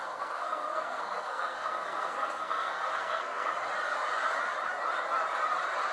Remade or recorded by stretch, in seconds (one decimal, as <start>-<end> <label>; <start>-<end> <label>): 0.0-3.5 remade; 3.5-5.9 recorded